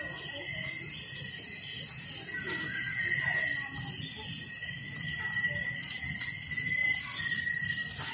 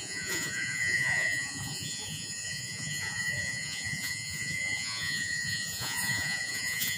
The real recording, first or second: first